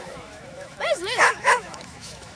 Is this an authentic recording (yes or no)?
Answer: no